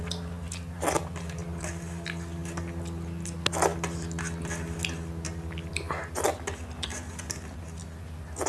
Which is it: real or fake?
real